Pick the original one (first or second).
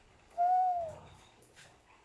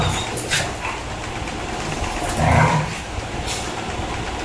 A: second